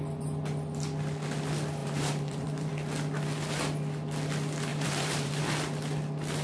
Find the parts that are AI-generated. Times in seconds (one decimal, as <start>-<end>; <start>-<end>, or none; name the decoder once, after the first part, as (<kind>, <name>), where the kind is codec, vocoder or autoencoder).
1.8-2.7 (vocoder, BigVGAN v2); 4.7-5.4